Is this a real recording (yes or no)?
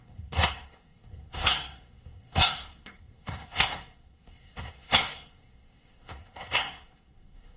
no